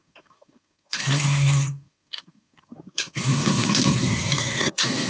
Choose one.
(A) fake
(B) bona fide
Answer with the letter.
A